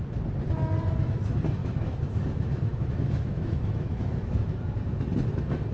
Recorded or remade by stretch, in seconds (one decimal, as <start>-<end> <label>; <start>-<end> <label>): 0.0-1.6 recorded; 1.6-5.0 remade; 5.0-5.7 recorded